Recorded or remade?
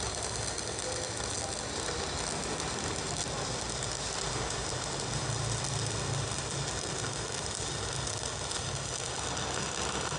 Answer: recorded